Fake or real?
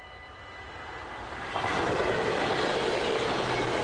real